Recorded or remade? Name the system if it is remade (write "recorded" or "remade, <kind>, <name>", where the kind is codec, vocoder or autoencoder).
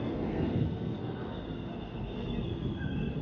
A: remade, codec, SNAC